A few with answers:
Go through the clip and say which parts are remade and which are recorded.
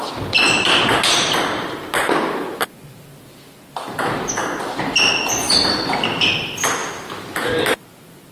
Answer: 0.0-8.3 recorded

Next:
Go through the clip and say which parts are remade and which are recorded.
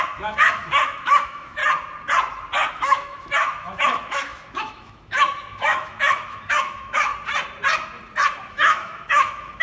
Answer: 0.0-1.6 remade; 1.6-2.7 recorded; 2.7-7.1 remade; 7.1-8.5 recorded; 8.5-9.6 remade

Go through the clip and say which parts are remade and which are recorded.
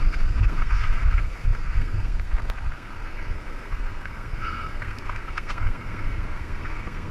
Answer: 0.0-7.1 remade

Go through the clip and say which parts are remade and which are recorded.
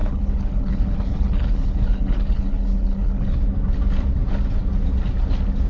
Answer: 0.0-3.4 remade; 3.4-5.7 recorded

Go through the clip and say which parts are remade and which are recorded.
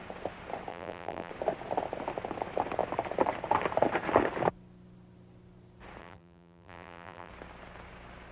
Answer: 0.0-0.7 recorded; 0.7-1.3 remade; 1.3-6.0 recorded; 6.0-7.3 remade; 7.3-8.3 recorded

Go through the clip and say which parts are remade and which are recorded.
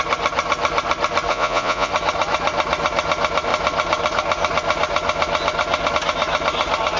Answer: 0.0-1.3 recorded; 1.3-1.9 remade; 1.9-7.0 recorded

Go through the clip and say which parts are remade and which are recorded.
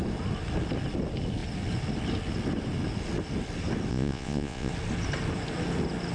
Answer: 0.0-3.9 recorded; 3.9-4.7 remade; 4.7-6.1 recorded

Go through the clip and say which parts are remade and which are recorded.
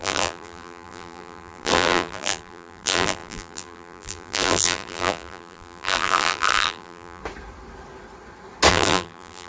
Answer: 0.0-7.2 remade; 7.2-8.7 recorded; 8.7-9.5 remade